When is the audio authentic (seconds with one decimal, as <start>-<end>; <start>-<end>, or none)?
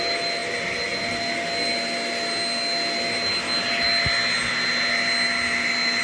0.0-6.0